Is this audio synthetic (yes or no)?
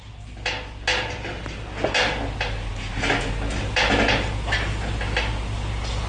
no